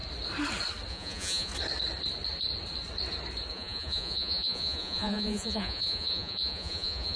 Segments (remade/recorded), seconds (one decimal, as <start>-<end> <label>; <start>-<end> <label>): 0.0-0.9 recorded; 0.9-1.5 remade; 1.5-3.5 recorded; 3.5-7.2 remade